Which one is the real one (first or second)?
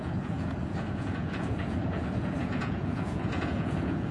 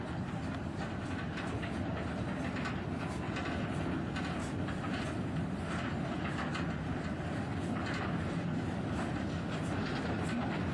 second